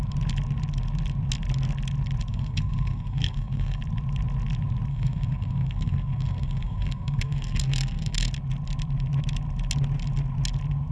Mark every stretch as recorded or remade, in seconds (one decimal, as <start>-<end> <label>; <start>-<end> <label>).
0.0-2.3 recorded; 2.3-3.8 remade; 3.8-4.9 recorded; 4.9-8.3 remade; 8.3-10.9 recorded